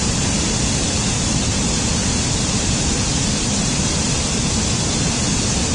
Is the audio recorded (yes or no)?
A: yes